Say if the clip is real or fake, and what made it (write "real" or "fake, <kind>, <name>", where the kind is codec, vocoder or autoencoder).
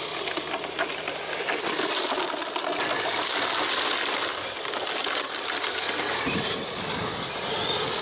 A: real